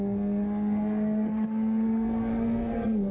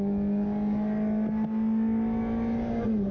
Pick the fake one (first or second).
first